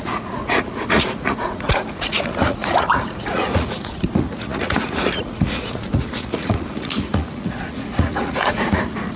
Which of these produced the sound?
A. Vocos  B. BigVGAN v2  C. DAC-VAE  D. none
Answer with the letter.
A